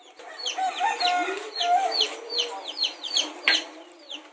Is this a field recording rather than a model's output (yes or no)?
yes